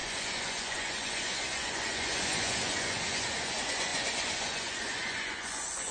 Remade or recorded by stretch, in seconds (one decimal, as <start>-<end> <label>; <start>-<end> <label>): 0.0-5.9 remade